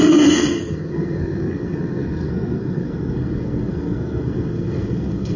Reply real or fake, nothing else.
fake